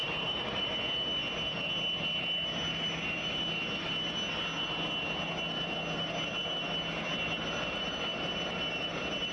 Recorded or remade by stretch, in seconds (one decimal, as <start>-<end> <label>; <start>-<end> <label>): 0.0-0.7 remade; 0.7-9.3 recorded

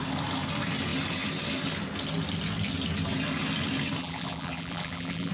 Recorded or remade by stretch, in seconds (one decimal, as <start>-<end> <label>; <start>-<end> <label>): 0.0-4.0 recorded; 4.0-5.3 remade

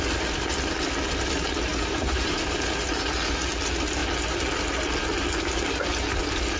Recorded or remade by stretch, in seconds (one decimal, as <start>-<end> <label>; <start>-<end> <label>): 0.0-1.7 recorded; 1.7-2.4 remade; 2.4-6.6 recorded

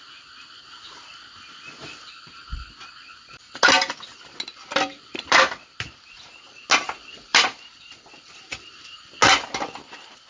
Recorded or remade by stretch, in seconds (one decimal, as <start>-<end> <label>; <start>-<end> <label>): 0.0-4.5 recorded; 4.5-5.5 remade; 5.5-7.3 recorded; 7.3-8.3 remade; 8.3-10.3 recorded

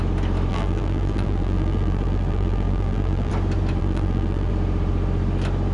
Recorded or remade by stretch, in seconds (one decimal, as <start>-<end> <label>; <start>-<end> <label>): 0.0-0.5 recorded; 0.5-3.3 remade; 3.3-3.8 recorded; 3.8-4.5 remade; 4.5-5.7 recorded

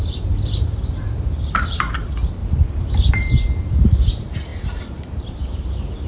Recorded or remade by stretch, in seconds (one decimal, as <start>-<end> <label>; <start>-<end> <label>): 0.0-2.4 remade; 2.4-3.1 recorded; 3.1-6.1 remade

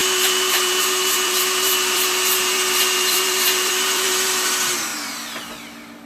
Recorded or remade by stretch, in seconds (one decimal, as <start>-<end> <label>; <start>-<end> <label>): 0.0-4.9 remade; 4.9-6.1 recorded